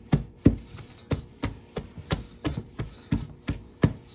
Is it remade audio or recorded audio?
recorded